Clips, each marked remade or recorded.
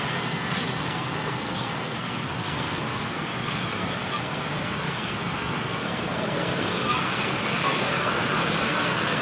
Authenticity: remade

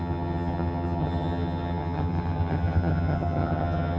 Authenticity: remade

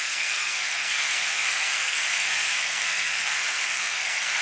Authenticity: remade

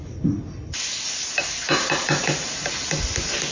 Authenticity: recorded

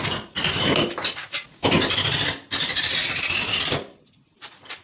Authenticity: recorded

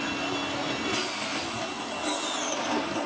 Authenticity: recorded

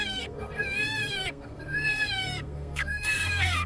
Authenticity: remade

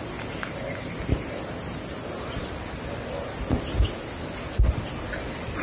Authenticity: recorded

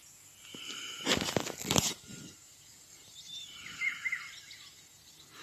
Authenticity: recorded